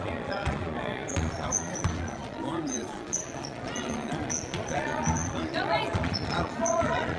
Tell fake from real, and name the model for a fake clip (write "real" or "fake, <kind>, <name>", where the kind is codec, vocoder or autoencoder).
fake, vocoder, Vocos